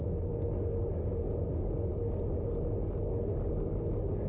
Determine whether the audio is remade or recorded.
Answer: recorded